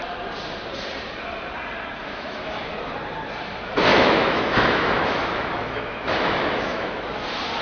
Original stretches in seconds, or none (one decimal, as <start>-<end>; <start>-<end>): 0.0-2.0; 2.6-3.9; 7.1-7.6